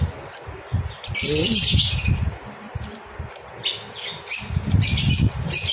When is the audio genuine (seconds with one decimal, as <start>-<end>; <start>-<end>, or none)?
0.0-5.7